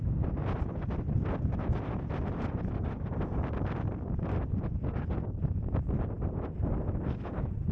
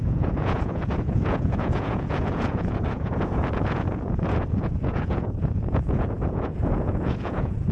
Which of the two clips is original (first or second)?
first